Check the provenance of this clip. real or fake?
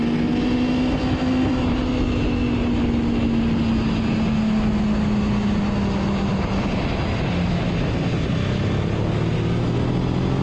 real